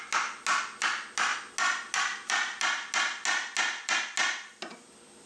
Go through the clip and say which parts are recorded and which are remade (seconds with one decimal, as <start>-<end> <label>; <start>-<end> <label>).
0.0-5.3 recorded